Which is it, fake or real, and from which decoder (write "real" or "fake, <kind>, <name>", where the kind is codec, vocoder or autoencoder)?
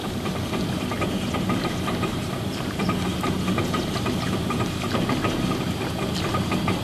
fake, vocoder, BigVGAN v2